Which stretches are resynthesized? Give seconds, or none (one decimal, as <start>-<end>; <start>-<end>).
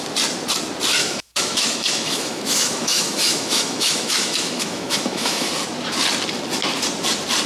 1.0-5.5